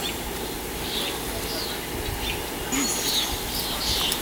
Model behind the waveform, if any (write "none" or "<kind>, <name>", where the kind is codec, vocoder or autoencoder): none